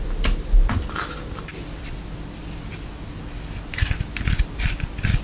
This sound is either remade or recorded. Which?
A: recorded